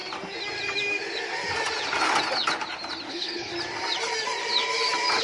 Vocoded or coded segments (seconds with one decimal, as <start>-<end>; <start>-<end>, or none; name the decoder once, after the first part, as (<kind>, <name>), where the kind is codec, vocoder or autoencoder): 3.1-3.5 (codec, HILCodec)